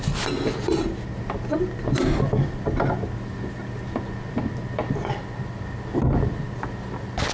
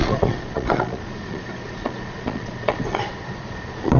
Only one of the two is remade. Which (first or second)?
second